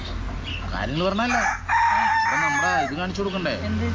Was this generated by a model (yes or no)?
no